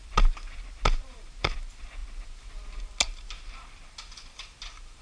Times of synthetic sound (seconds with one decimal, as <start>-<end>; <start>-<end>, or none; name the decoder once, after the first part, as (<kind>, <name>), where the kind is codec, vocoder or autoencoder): none